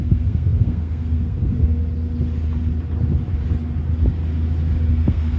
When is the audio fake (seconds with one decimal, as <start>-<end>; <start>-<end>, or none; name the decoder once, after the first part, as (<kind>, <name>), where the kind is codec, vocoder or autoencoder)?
0.0-1.7 (codec, SNAC); 4.9-5.4